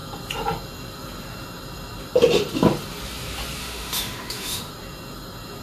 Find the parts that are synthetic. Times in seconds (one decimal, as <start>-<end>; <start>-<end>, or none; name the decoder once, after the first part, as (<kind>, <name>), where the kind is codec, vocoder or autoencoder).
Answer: 3.6-4.7 (autoencoder, DAC-VAE)